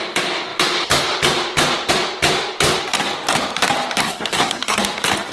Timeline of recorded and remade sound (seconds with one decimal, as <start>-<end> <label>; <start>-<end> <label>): 0.0-4.0 recorded; 4.0-4.8 remade; 4.8-5.3 recorded

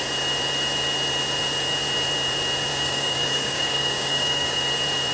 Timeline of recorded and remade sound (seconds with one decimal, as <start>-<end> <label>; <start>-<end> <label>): 0.0-2.7 recorded; 2.7-4.6 remade; 4.6-5.1 recorded

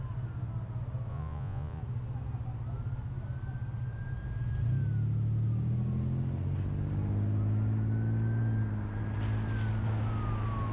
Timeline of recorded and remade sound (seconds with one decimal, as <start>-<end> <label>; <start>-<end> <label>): 0.0-1.1 recorded; 1.1-1.8 remade; 1.8-10.7 recorded

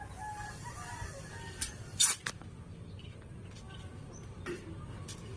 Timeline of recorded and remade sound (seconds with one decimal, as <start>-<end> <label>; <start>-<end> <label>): 0.0-5.4 recorded

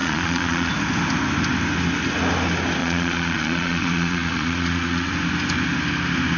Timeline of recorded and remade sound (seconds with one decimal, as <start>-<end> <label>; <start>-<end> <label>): 0.0-0.7 remade; 0.7-2.8 recorded; 2.8-5.1 remade; 5.1-6.4 recorded

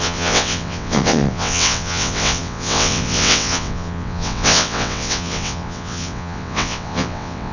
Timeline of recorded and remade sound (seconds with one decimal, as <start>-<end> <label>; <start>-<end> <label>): 0.0-7.5 remade